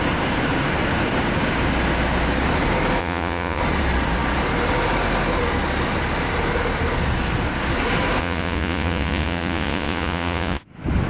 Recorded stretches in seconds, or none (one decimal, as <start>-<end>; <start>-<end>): 0.0-3.0; 3.6-8.2; 10.6-11.1